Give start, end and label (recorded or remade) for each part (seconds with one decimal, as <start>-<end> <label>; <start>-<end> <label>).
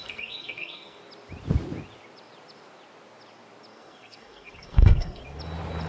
0.0-1.0 remade; 1.0-3.7 recorded; 3.7-5.2 remade; 5.2-5.9 recorded